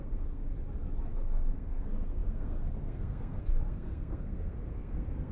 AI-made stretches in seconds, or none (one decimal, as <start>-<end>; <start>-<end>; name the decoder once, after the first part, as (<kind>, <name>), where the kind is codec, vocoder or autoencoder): 0.0-0.4 (codec, SNAC); 1.1-5.3